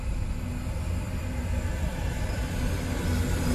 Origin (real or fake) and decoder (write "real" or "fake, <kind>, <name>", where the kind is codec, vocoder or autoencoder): real